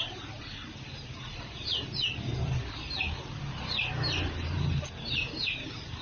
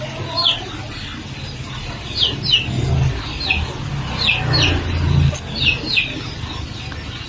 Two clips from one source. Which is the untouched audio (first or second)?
second